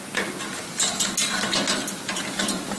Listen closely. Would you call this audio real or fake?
real